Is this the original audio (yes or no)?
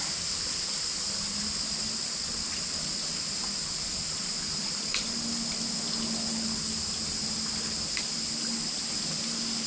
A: yes